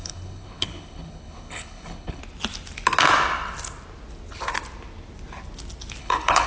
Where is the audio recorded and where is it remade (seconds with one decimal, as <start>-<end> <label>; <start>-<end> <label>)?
0.0-2.2 remade; 2.2-6.0 recorded; 6.0-6.5 remade